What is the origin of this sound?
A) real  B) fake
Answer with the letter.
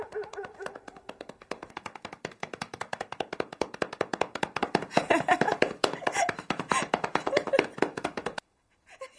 A